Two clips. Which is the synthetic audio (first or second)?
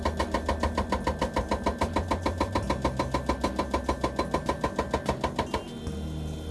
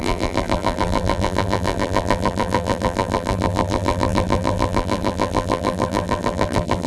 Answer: second